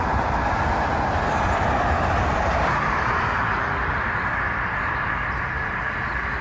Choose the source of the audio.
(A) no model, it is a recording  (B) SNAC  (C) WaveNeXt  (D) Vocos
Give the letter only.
A